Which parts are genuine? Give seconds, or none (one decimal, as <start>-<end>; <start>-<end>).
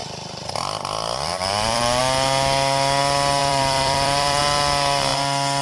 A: 2.0-3.4; 4.4-5.6